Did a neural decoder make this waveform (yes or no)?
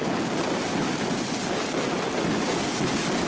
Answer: no